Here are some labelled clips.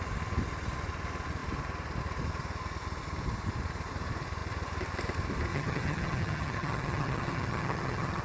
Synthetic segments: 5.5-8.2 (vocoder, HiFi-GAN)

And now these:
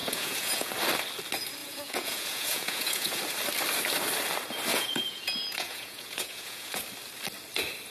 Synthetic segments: 0.0-0.7 (vocoder, Vocos); 1.6-3.2; 4.7-6.8

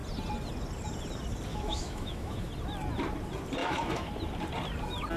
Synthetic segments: 1.5-2.5 (autoencoder, DAC-VAE); 3.6-4.1

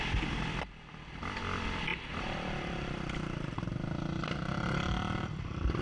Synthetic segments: 1.9-5.8 (vocoder, BigVGAN v2)

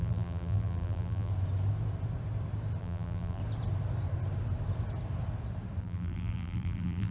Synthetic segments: 0.0-1.3 (vocoder, BigVGAN v2); 2.8-3.4; 5.8-7.1